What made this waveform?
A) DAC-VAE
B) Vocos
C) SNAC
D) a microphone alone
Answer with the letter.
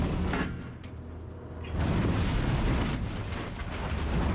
D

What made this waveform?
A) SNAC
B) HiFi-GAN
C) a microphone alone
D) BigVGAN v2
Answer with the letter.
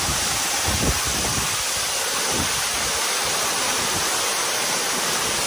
C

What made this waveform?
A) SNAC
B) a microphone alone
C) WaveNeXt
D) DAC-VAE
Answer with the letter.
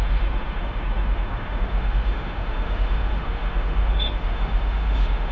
D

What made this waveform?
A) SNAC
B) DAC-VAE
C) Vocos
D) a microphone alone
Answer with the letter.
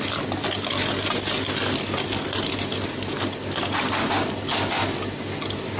D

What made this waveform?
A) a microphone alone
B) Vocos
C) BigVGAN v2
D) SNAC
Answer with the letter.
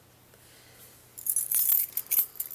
A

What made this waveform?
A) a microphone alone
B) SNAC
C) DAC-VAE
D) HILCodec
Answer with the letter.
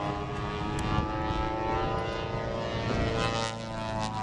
A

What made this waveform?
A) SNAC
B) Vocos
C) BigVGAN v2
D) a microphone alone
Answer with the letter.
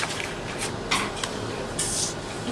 D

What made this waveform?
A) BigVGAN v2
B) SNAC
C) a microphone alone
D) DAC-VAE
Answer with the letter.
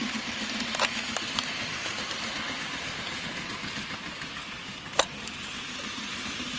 A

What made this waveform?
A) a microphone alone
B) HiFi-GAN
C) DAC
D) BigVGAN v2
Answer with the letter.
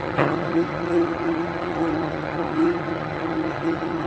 B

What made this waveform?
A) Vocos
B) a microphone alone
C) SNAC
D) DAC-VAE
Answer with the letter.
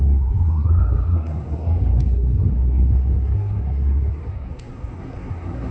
C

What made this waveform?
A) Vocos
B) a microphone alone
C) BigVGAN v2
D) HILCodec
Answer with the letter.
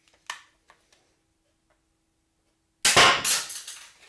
B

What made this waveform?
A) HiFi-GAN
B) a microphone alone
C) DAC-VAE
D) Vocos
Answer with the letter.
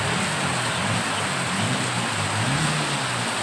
B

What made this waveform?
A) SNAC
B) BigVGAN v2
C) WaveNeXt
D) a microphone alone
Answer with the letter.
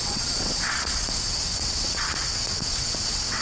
C